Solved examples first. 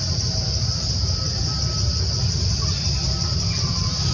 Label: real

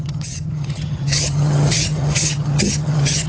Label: fake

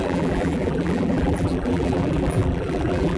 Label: fake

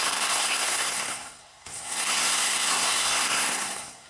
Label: fake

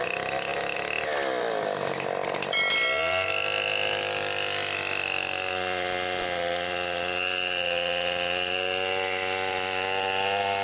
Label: real